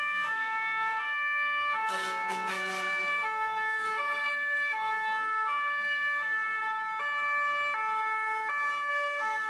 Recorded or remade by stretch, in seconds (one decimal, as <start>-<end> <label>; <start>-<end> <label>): 0.0-6.6 remade; 6.6-8.9 recorded; 8.9-9.5 remade